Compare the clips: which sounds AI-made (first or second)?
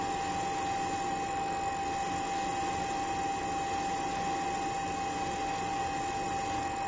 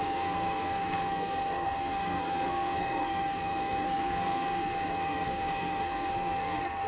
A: second